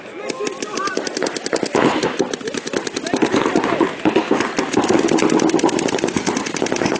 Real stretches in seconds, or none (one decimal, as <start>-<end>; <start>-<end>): 0.0-7.0